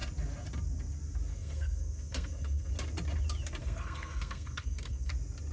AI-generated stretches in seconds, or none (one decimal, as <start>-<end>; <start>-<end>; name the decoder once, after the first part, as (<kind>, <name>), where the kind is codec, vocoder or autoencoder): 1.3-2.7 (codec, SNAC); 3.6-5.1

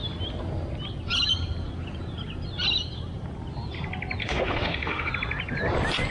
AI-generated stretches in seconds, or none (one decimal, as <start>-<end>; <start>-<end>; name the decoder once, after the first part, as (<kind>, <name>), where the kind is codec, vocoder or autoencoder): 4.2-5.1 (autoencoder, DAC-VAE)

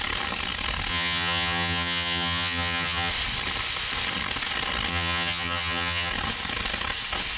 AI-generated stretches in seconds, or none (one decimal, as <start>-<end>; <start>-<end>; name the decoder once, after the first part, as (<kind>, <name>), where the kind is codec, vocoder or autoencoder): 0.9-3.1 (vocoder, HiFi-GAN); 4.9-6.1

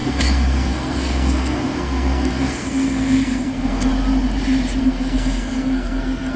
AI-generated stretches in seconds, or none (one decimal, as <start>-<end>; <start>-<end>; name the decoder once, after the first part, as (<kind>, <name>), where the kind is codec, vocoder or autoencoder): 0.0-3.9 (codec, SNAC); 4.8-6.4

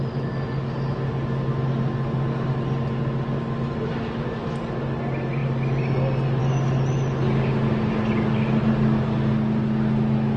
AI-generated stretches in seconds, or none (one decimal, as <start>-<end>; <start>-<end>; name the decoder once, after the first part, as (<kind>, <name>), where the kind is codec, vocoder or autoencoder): none

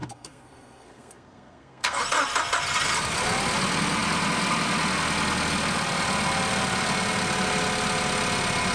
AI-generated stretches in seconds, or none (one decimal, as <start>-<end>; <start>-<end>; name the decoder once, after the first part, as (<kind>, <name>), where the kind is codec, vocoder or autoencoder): 0.0-2.0 (codec, SNAC)

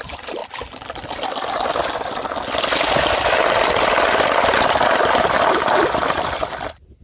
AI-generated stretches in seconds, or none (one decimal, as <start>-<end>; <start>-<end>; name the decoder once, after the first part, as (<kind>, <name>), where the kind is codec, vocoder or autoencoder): none

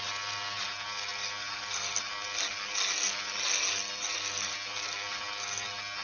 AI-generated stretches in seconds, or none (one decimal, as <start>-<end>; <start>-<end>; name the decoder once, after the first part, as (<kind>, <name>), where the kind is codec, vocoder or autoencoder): none